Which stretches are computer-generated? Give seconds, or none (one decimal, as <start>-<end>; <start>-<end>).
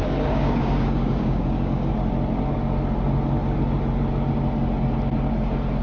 0.0-1.9